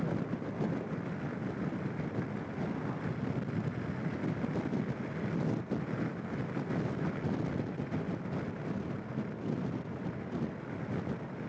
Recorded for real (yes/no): yes